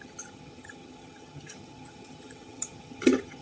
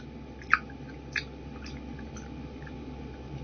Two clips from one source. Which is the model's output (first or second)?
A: first